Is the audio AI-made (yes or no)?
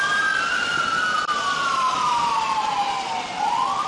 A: no